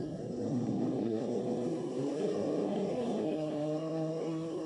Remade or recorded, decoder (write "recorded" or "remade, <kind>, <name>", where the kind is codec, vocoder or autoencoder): remade, codec, SNAC